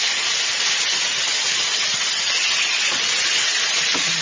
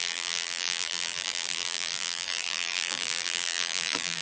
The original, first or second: first